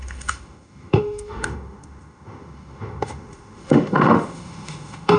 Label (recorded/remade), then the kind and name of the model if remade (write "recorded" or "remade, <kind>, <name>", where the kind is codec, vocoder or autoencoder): remade, autoencoder, DAC-VAE